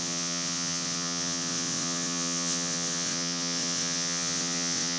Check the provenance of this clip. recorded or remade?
remade